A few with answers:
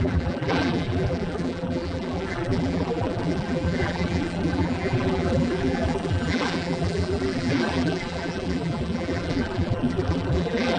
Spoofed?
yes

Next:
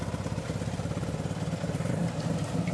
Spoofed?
yes